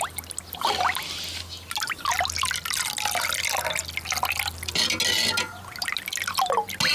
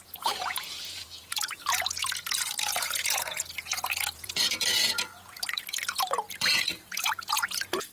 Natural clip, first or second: first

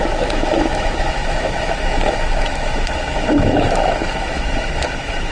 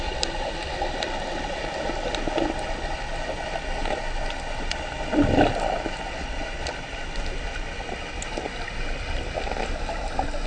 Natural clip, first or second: second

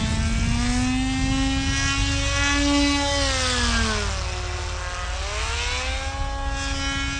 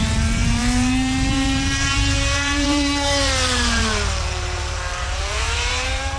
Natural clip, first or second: first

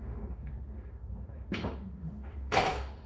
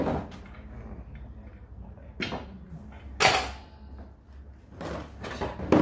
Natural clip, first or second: second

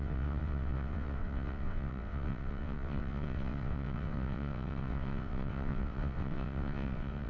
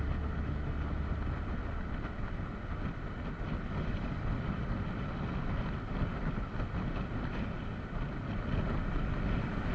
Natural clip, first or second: second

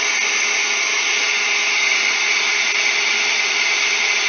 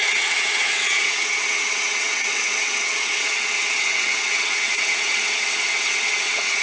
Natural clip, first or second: first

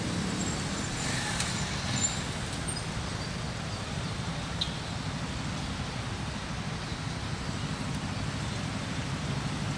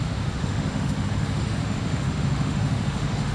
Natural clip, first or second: first